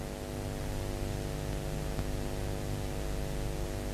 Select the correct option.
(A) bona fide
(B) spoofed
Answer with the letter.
A